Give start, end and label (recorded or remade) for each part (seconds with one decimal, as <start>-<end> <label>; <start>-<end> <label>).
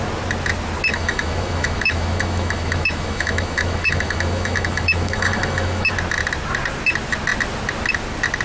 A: 0.0-0.9 recorded; 0.9-5.9 remade; 5.9-8.4 recorded